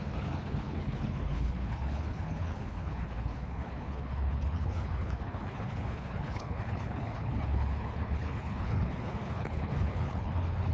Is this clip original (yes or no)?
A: no